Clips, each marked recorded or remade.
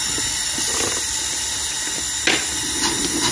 recorded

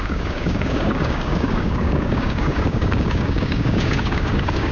remade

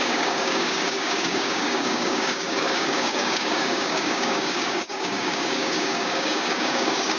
remade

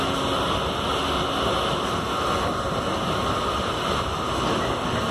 recorded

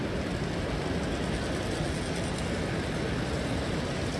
recorded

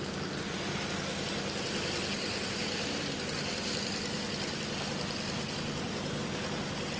recorded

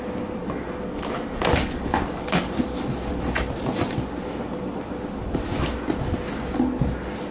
recorded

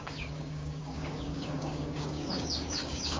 remade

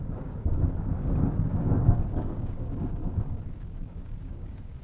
remade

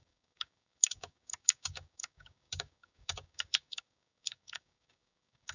remade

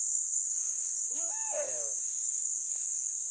remade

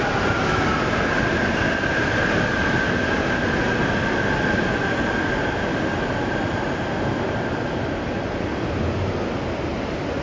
recorded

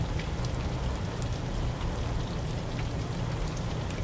recorded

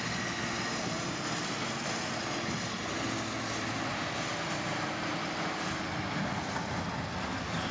recorded